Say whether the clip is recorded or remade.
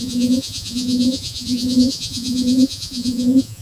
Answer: remade